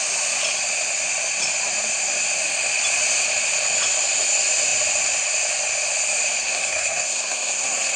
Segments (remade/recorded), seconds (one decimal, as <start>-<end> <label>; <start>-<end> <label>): 0.0-6.4 recorded; 6.4-8.0 remade